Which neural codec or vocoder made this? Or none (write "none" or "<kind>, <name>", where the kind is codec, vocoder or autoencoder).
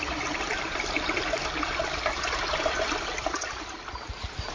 none